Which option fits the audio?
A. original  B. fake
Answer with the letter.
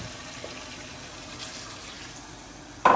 A